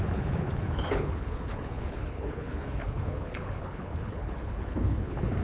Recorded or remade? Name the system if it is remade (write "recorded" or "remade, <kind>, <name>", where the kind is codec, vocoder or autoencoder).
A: remade, codec, HILCodec